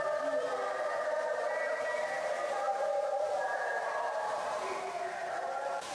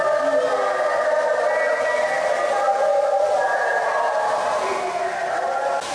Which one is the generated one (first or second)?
first